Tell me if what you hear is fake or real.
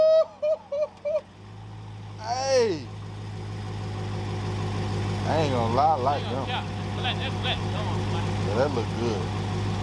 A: real